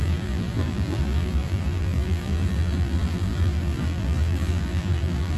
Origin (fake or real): fake